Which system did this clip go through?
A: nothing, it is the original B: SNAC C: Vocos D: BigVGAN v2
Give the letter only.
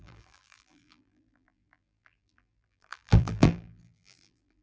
D